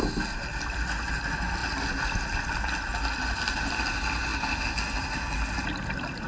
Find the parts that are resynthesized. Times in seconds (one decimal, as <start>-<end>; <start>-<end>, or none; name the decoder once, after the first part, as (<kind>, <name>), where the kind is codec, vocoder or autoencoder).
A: none